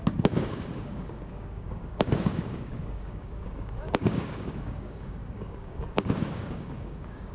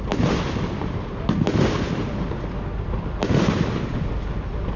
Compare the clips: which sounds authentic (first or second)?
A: second